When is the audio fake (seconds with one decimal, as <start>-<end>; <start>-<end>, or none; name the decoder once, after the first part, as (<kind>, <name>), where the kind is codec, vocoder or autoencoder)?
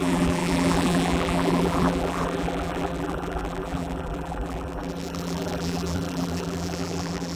0.0-7.4 (vocoder, BigVGAN v2)